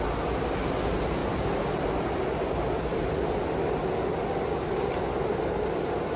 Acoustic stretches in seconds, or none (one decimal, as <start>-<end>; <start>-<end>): 0.0-6.2